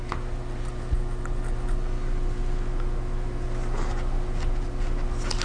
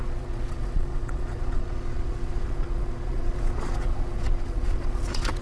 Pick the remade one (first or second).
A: second